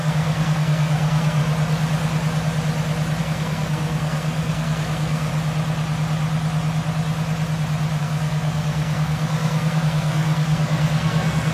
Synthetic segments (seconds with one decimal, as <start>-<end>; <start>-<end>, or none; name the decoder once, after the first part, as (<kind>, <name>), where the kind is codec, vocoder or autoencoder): 0.0-1.4 (codec, SNAC); 3.2-5.3; 8.0-11.5

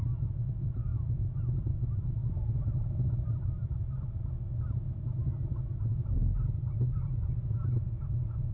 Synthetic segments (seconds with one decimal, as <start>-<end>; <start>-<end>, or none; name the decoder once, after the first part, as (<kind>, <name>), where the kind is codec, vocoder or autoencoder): 0.0-2.2 (vocoder, Vocos); 5.8-6.2; 7.1-8.5